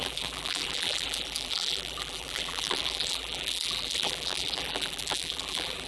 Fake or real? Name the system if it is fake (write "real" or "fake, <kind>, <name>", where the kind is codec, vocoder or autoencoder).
fake, vocoder, BigVGAN v2